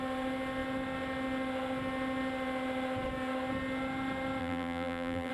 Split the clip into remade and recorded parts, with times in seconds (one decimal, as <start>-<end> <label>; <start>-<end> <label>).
0.0-4.4 recorded; 4.4-5.3 remade